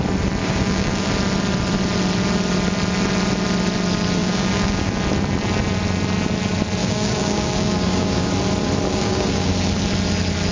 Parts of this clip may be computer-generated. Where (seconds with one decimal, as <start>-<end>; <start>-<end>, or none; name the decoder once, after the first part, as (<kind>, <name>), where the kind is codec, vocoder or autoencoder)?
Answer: 0.4-1.1 (codec, DAC); 4.2-4.9; 6.8-8.3; 8.9-9.5